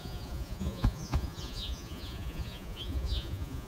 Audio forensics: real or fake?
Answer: fake